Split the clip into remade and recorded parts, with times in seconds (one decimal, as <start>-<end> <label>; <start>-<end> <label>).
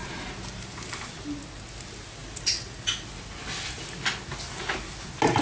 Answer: 0.0-1.0 remade; 1.0-5.4 recorded